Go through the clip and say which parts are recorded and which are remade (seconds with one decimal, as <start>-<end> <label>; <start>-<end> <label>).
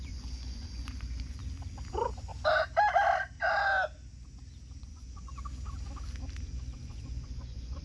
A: 0.0-1.4 remade; 1.4-1.9 recorded; 1.9-2.3 remade; 2.3-4.8 recorded; 4.8-5.3 remade; 5.3-6.5 recorded; 6.5-7.8 remade